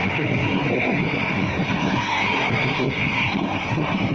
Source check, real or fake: fake